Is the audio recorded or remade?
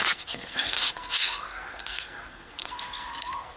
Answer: remade